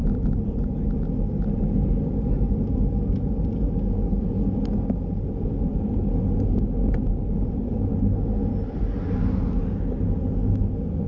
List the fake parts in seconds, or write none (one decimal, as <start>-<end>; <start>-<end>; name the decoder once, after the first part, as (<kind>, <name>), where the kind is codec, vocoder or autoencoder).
none